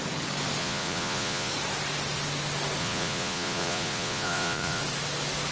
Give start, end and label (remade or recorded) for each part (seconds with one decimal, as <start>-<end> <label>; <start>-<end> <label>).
0.0-0.6 recorded; 0.6-1.5 remade; 1.5-2.8 recorded; 2.8-4.8 remade; 4.8-5.5 recorded